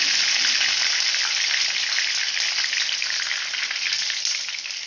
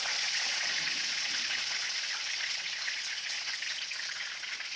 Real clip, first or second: first